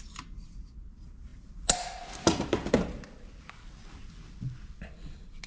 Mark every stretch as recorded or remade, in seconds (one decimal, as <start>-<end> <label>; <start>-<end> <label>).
0.0-5.5 recorded